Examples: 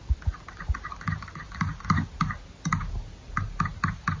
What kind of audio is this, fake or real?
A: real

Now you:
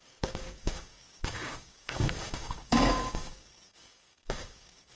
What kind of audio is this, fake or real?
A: fake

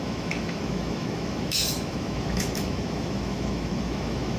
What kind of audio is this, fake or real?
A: fake